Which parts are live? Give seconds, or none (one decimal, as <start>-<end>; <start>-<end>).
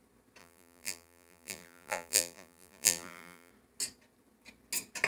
0.0-0.4; 3.5-5.1